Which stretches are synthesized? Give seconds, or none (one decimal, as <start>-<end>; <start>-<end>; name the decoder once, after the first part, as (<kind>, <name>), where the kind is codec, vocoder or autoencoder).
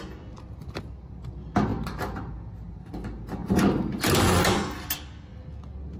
1.7-2.3 (vocoder, BigVGAN v2)